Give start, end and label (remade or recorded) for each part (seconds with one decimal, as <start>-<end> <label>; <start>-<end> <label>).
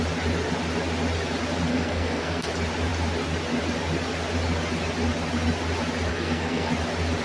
0.0-1.7 recorded; 1.7-2.5 remade; 2.5-6.1 recorded; 6.1-6.7 remade; 6.7-7.2 recorded